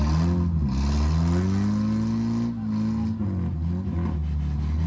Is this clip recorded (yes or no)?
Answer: yes